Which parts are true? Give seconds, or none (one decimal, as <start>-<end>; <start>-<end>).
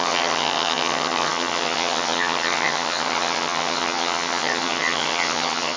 none